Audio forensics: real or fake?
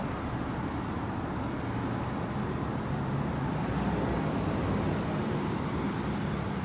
real